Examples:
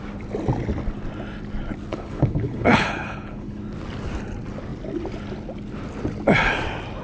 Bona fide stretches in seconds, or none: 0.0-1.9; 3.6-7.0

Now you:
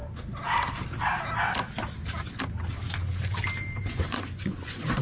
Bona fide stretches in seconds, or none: 0.0-3.8

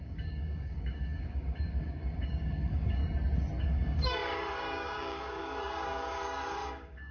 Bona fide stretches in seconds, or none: 3.0-3.6

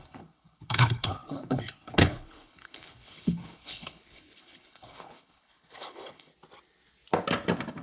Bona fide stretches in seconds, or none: 6.3-7.8